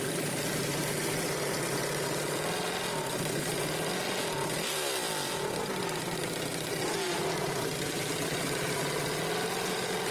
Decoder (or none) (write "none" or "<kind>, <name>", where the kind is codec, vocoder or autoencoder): none